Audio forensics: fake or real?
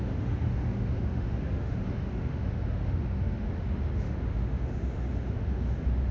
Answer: fake